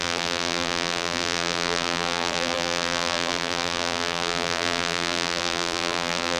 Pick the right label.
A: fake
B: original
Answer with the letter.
A